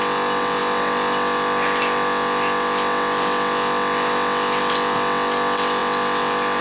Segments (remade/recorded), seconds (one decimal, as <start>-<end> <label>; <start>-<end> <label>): 0.0-6.6 recorded